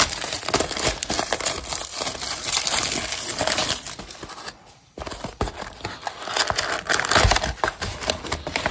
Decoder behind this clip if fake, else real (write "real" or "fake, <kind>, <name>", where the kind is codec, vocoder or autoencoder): real